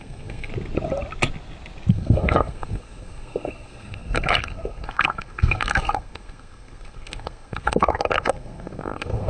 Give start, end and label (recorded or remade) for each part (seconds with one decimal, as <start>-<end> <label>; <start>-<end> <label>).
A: 0.0-0.5 remade; 0.5-1.9 recorded; 1.9-9.3 remade